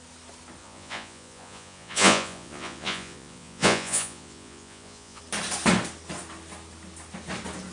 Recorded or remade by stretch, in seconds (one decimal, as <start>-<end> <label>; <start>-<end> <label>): 0.0-0.6 recorded; 0.6-5.2 remade; 5.2-7.7 recorded